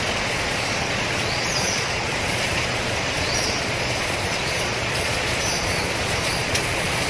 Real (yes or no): no